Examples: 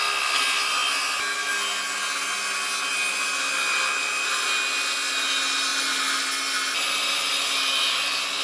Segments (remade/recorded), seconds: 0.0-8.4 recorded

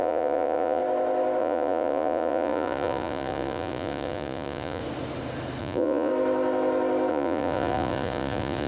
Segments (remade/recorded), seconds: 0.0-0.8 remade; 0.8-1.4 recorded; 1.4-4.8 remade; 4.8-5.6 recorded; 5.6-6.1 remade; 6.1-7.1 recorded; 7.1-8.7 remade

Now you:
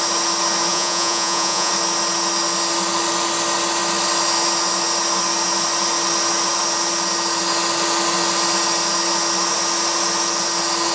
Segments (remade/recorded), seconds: 0.0-0.7 recorded; 0.7-1.7 remade; 1.7-10.9 recorded

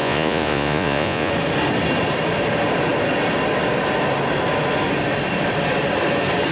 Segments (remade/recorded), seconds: 0.0-1.3 remade; 1.3-6.5 recorded

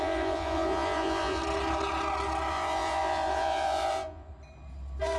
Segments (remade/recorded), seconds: 0.0-1.4 remade; 1.4-2.5 recorded; 2.5-4.3 remade; 4.3-5.2 recorded

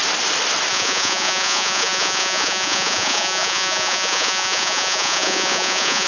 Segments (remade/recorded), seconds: 0.0-0.7 recorded; 0.7-6.1 remade